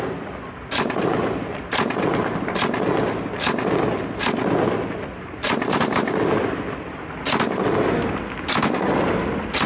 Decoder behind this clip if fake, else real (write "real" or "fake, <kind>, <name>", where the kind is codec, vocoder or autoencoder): real